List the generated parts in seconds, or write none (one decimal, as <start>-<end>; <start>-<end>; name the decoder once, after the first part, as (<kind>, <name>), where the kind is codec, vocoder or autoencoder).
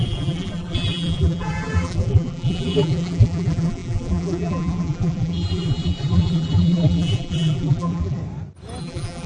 0.0-8.2 (vocoder, BigVGAN v2); 8.8-9.3